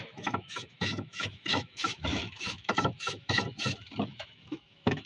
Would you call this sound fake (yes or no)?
yes